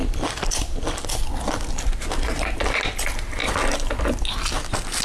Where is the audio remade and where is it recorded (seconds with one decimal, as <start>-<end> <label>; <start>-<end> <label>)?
0.0-5.0 recorded